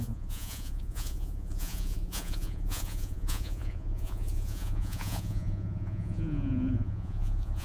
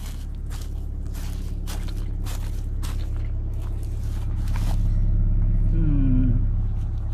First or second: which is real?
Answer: second